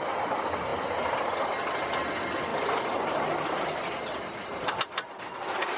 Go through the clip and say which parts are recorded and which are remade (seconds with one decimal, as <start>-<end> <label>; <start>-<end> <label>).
0.0-5.8 recorded